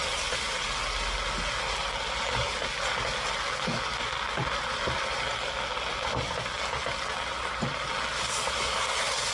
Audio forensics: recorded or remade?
recorded